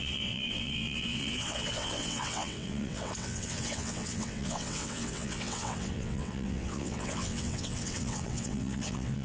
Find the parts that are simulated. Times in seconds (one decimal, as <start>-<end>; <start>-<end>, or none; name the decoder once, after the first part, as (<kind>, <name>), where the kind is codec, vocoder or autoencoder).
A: 0.0-9.2 (vocoder, WaveNeXt)